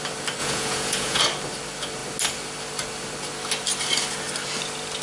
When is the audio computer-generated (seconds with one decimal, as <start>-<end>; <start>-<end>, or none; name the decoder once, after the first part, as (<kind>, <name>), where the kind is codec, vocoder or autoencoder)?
0.4-1.2 (vocoder, Vocos)